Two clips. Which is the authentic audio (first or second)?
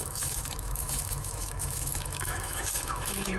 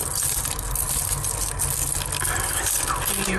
second